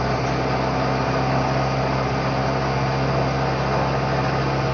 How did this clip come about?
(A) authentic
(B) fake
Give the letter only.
A